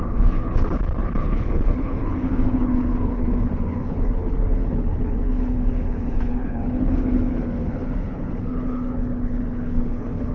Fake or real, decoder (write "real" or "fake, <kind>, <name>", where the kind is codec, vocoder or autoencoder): fake, codec, HILCodec